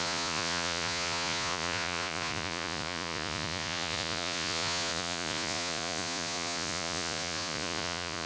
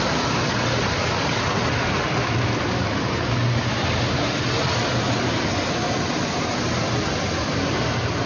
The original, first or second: second